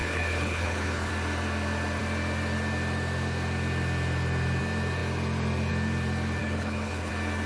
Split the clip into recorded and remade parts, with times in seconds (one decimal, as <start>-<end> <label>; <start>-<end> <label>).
0.0-1.1 remade; 1.1-6.4 recorded; 6.4-7.1 remade; 7.1-7.5 recorded